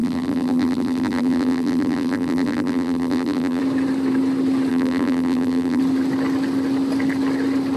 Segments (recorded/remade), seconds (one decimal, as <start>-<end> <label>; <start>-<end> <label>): 0.0-3.6 remade; 3.6-4.7 recorded; 4.7-5.8 remade; 5.8-7.8 recorded